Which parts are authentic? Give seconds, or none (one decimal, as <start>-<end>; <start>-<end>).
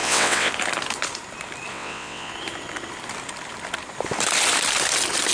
0.5-1.7; 2.3-5.3